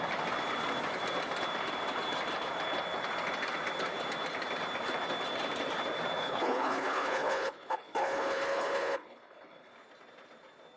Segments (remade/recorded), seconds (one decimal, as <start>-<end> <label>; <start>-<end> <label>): 0.0-6.2 recorded; 6.2-9.7 remade; 9.7-10.8 recorded